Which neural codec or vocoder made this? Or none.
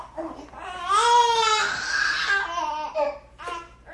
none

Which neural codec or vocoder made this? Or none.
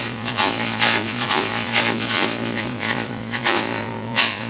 vocoder, Vocos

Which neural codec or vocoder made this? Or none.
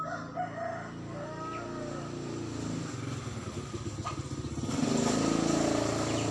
none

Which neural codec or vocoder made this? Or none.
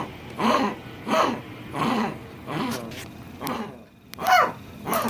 none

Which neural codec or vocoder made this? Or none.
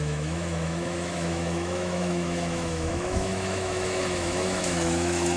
autoencoder, DAC-VAE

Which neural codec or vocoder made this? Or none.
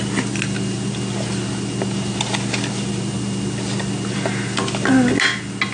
none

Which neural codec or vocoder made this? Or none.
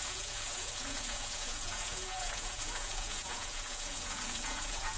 vocoder, Vocos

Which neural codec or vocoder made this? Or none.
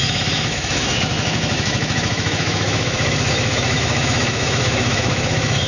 autoencoder, DAC-VAE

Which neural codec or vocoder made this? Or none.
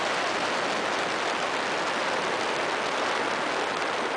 none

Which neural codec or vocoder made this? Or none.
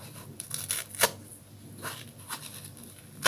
none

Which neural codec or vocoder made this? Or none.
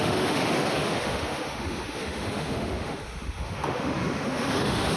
autoencoder, DAC-VAE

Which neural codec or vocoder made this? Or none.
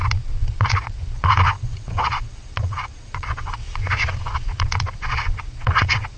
vocoder, Vocos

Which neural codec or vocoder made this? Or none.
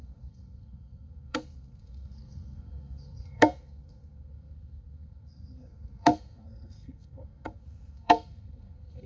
codec, SNAC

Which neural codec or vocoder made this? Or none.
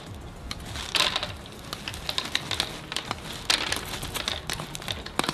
none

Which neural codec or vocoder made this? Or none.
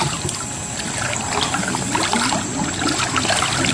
none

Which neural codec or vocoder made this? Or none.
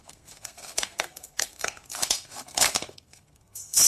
codec, SNAC